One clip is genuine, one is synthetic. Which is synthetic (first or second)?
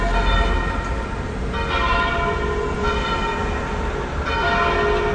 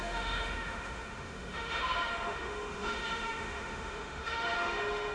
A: second